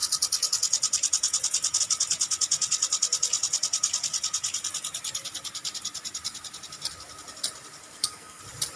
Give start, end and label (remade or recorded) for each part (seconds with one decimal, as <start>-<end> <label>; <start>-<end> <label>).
0.0-7.8 recorded; 7.8-8.4 remade; 8.4-8.8 recorded